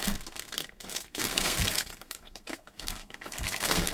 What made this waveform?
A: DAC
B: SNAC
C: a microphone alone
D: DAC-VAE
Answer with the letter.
B